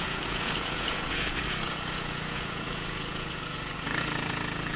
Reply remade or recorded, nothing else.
remade